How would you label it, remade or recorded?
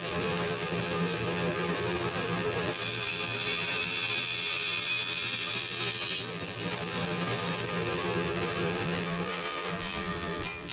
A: remade